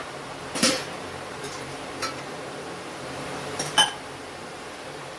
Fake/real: fake